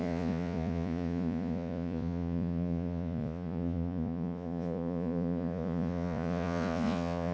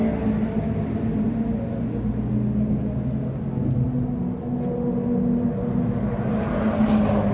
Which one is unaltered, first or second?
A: second